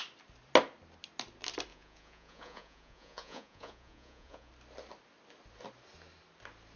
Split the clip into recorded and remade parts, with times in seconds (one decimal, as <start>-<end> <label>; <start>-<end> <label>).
0.0-1.7 recorded; 1.7-4.5 remade; 4.5-6.8 recorded